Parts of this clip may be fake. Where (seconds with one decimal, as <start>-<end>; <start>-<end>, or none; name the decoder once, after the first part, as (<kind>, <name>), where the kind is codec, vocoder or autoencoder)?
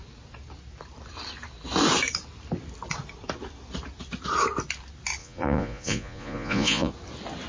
5.2-6.9 (vocoder, Vocos)